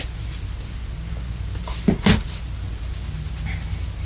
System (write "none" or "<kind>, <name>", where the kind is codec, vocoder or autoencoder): none